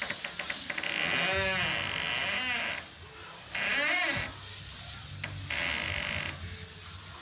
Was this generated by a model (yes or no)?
no